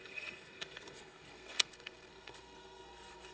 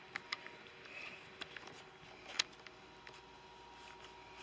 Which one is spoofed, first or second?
first